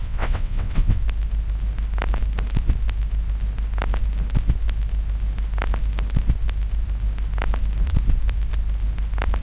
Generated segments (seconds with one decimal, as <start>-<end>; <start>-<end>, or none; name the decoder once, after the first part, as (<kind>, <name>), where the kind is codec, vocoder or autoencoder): 0.0-1.0 (vocoder, WaveNeXt)